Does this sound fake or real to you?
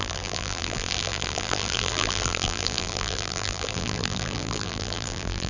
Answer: fake